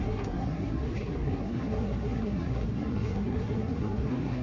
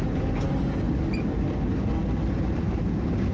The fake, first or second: first